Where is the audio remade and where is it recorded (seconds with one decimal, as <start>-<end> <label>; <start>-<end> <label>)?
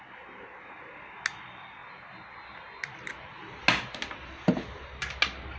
0.0-5.6 recorded